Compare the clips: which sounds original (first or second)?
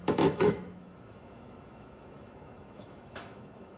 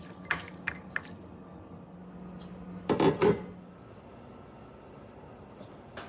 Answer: second